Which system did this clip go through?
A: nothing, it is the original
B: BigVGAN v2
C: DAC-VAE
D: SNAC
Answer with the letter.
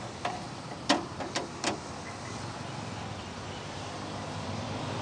A